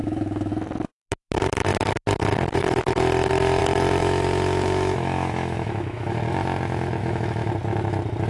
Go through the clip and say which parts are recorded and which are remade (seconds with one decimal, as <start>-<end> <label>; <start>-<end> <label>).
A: 0.0-0.5 remade; 0.5-4.0 recorded; 4.0-6.2 remade; 6.2-7.0 recorded; 7.0-7.5 remade; 7.5-8.3 recorded